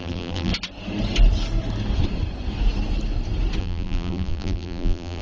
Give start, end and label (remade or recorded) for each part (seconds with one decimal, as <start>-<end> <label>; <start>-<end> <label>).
0.0-0.5 remade; 0.5-3.6 recorded; 3.6-5.2 remade